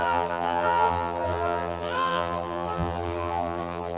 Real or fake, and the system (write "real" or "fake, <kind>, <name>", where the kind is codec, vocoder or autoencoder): fake, vocoder, BigVGAN v2